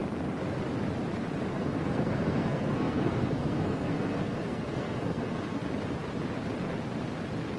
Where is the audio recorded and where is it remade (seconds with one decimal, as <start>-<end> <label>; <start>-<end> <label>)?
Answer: 0.0-1.5 recorded; 1.5-5.6 remade; 5.6-7.6 recorded